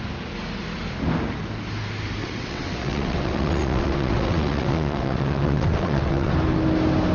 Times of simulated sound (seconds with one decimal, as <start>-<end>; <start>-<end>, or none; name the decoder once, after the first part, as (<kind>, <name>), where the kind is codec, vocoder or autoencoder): 2.2-6.3 (vocoder, WaveNeXt)